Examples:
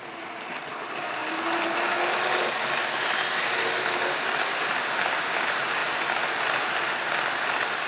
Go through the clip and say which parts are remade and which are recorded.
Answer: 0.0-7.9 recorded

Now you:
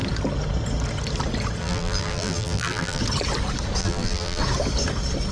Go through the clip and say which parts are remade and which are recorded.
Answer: 0.0-1.6 recorded; 1.6-3.0 remade; 3.0-3.8 recorded; 3.8-4.4 remade; 4.4-5.3 recorded

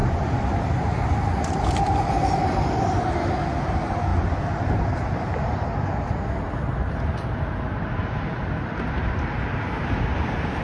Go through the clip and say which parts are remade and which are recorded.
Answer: 0.0-3.0 remade; 3.0-10.6 recorded

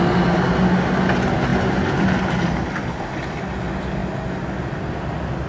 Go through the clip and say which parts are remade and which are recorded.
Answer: 0.0-1.5 recorded; 1.5-2.2 remade; 2.2-5.5 recorded

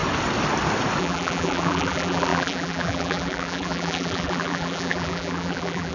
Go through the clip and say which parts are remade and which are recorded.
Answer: 0.0-1.0 recorded; 1.0-5.9 remade

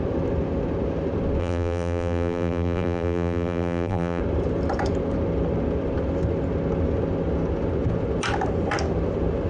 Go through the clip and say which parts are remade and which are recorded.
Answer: 0.0-1.4 recorded; 1.4-4.2 remade; 4.2-9.5 recorded

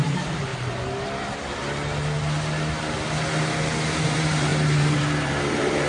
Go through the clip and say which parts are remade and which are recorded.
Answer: 0.0-0.5 remade; 0.5-4.0 recorded; 4.0-5.9 remade